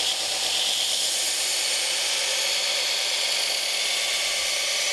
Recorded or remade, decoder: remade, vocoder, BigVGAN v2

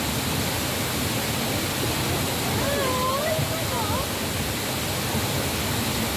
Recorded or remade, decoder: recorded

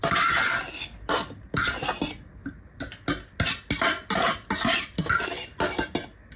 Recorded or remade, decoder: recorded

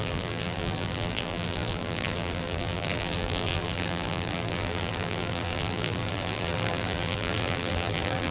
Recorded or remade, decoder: remade, vocoder, BigVGAN v2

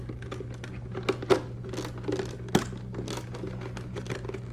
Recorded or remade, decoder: recorded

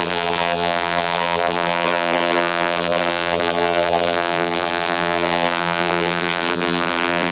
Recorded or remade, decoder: remade, vocoder, BigVGAN v2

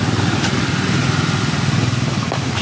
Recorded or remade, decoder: remade, vocoder, BigVGAN v2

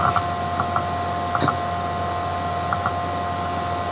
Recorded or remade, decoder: recorded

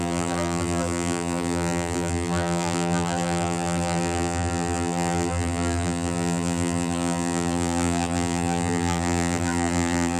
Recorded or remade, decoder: remade, vocoder, BigVGAN v2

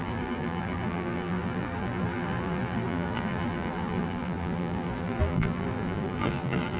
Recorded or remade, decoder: remade, vocoder, BigVGAN v2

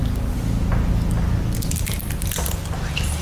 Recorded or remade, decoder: recorded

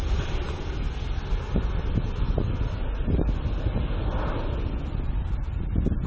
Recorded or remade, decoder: recorded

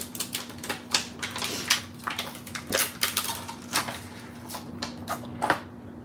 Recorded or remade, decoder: recorded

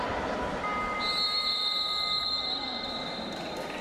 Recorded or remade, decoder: recorded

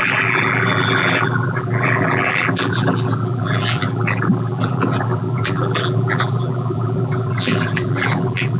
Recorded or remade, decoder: remade, vocoder, BigVGAN v2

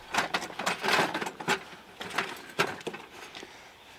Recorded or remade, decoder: recorded